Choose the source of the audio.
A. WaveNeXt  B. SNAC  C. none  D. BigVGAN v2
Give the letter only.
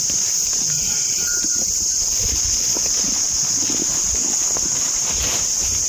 C